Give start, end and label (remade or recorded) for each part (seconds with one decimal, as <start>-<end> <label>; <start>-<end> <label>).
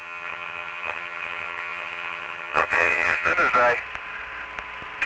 0.0-3.3 remade; 3.3-5.1 recorded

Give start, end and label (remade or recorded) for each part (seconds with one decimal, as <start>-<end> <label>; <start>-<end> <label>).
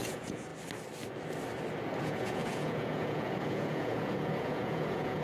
0.0-0.5 remade; 0.5-2.0 recorded; 2.0-5.2 remade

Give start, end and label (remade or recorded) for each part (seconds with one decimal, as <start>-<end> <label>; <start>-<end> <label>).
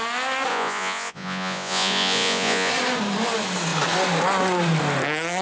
0.0-0.5 recorded; 0.5-2.7 remade; 2.7-5.4 recorded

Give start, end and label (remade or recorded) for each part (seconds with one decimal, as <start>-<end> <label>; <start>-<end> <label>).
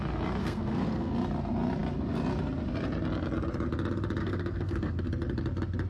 0.0-0.4 recorded; 0.4-1.1 remade; 1.1-4.2 recorded; 4.2-5.0 remade; 5.0-5.9 recorded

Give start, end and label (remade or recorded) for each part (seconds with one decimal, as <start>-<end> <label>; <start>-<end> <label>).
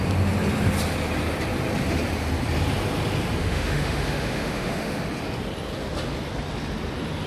0.0-3.4 recorded; 3.4-5.0 remade; 5.0-7.3 recorded